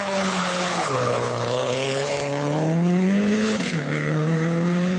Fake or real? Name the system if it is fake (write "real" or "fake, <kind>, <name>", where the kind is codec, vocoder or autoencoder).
fake, codec, HILCodec